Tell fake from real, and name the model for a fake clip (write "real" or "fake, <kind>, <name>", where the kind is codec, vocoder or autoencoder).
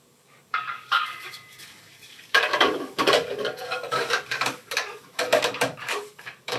fake, codec, DAC